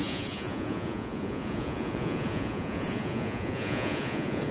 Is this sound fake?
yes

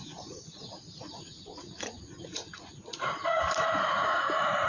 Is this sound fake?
yes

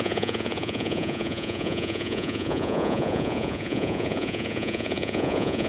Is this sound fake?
yes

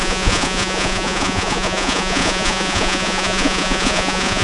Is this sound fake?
yes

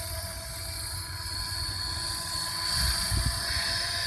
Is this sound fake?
yes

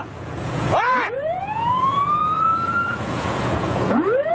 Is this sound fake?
yes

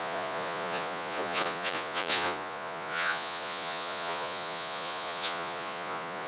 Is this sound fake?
yes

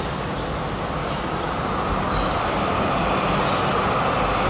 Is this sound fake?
no